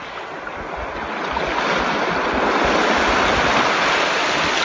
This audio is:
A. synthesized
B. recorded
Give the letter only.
B